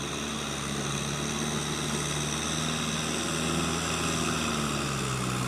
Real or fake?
real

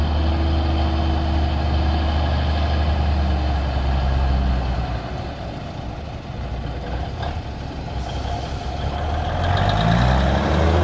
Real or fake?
real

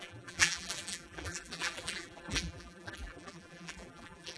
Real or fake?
fake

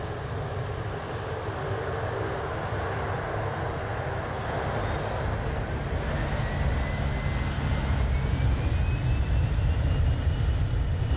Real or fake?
real